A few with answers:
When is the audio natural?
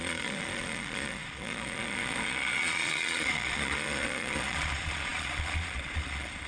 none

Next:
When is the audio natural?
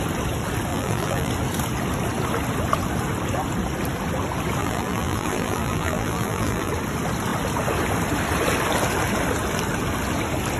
0.0-0.7; 1.3-4.6; 6.7-10.6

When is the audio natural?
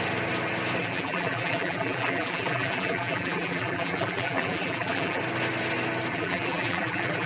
0.0-0.8; 5.2-6.1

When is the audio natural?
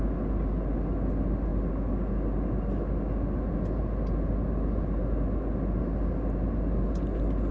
0.0-7.5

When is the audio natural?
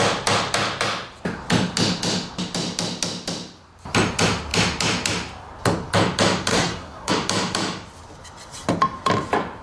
0.0-6.5; 7.1-9.6